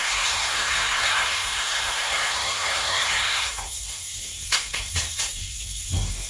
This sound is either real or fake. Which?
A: fake